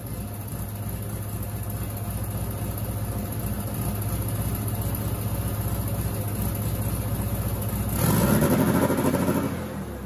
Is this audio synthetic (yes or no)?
no